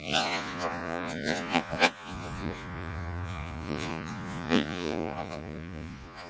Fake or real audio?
fake